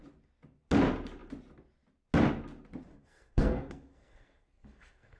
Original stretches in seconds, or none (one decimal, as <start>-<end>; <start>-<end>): 0.0-2.9